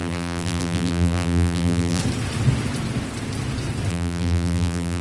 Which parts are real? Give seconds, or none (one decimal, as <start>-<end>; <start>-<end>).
2.0-3.9